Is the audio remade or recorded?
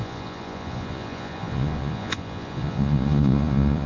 remade